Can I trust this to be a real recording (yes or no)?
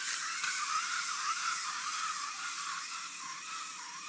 yes